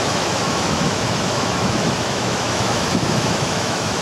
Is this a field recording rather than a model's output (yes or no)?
no